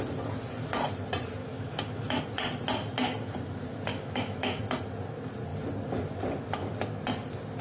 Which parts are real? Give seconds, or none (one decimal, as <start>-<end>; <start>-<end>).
0.0-1.4; 2.2-3.9; 4.6-7.6